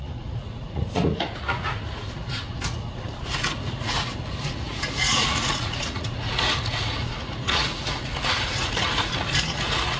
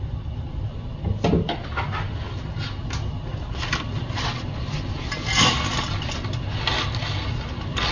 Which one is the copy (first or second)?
first